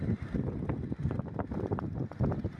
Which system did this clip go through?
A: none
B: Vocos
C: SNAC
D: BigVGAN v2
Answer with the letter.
A